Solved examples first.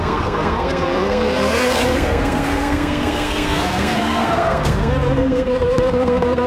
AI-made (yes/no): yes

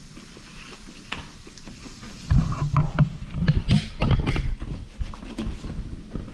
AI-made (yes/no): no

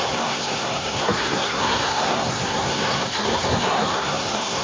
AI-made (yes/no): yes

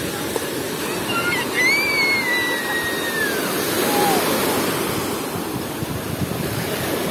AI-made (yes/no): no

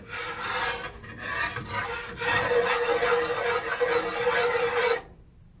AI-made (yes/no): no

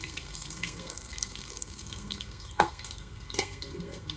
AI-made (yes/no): yes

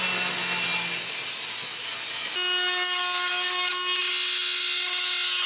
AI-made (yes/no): no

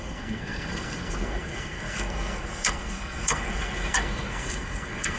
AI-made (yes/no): yes